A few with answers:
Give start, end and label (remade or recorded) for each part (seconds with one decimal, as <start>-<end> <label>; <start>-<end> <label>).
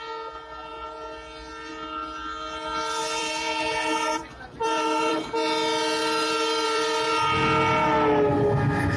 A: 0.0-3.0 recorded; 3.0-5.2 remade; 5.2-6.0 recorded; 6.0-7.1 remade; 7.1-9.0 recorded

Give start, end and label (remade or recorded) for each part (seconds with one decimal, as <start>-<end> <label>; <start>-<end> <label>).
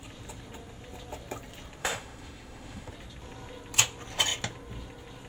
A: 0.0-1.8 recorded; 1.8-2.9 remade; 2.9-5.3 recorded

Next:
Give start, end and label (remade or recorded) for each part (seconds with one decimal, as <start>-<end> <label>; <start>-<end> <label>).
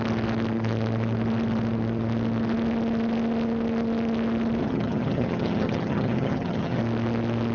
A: 0.0-4.6 recorded; 4.6-6.8 remade; 6.8-7.5 recorded